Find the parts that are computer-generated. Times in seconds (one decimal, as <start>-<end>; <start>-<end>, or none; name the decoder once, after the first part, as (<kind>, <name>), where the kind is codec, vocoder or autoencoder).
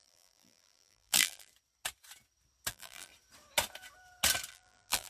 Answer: 0.0-1.5 (vocoder, BigVGAN v2); 2.7-3.1; 4.5-5.1